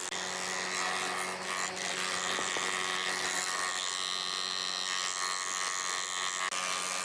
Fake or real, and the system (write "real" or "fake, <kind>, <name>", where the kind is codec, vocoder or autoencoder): real